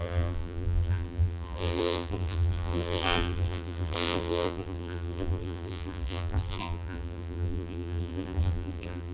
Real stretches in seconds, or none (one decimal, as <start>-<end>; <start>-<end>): none